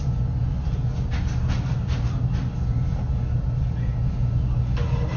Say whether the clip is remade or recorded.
recorded